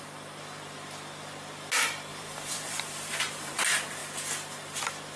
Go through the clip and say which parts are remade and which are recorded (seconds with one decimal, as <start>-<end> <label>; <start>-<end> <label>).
0.0-2.1 recorded; 2.1-3.6 remade; 3.6-5.2 recorded